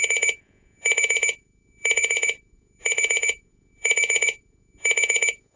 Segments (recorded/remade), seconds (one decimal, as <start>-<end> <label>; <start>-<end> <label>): 0.0-5.6 remade